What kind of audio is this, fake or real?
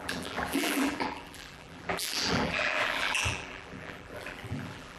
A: fake